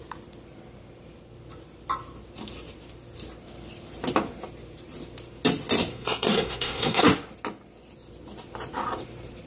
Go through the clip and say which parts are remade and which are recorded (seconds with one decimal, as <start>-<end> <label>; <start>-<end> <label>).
0.0-5.9 recorded; 5.9-7.1 remade; 7.1-9.5 recorded